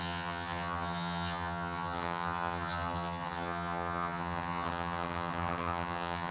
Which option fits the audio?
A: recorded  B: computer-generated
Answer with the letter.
B